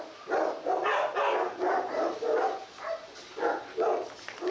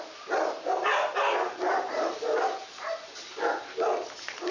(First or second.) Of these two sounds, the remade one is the second